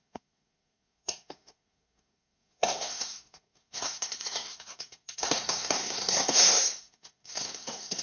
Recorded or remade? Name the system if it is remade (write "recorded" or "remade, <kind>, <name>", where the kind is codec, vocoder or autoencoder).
remade, codec, SNAC